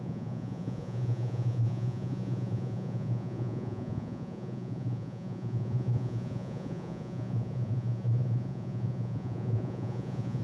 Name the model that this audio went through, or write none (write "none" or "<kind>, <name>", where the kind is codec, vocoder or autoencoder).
vocoder, Vocos